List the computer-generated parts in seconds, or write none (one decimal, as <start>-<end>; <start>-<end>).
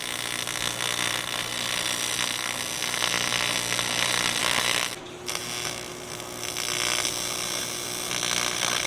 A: 4.4-5.0